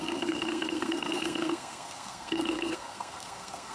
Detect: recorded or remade remade